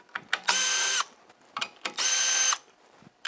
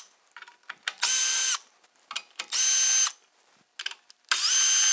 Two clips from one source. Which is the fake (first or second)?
first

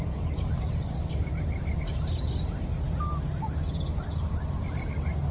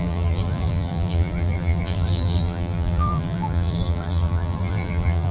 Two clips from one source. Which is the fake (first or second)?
second